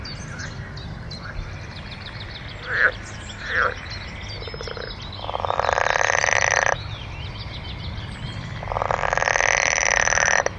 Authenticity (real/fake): real